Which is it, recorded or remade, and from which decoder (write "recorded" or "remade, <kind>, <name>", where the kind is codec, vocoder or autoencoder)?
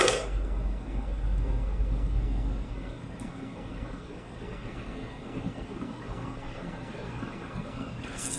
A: remade, codec, SNAC